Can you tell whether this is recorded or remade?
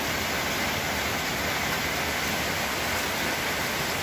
recorded